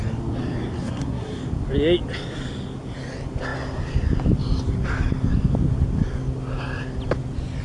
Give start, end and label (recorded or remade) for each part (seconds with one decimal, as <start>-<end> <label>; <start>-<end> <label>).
0.0-0.8 recorded; 0.8-1.4 remade; 1.4-7.6 recorded